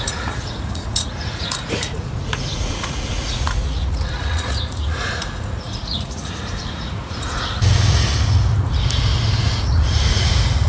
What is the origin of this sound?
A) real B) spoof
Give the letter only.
B